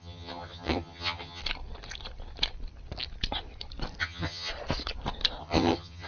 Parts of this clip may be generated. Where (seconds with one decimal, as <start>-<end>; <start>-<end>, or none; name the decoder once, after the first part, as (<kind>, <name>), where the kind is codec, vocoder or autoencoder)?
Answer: 0.0-1.4 (vocoder, HiFi-GAN); 4.0-4.5; 5.4-6.1